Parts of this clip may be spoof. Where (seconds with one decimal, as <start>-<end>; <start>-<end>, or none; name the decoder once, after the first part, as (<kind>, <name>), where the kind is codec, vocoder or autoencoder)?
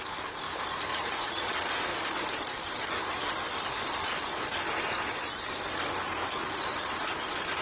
0.9-1.5 (vocoder, Vocos)